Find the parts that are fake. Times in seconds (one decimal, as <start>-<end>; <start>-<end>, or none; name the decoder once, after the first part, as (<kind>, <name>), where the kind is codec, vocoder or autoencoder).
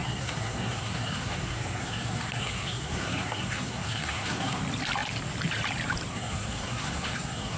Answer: 0.0-4.6 (codec, SNAC); 6.1-7.6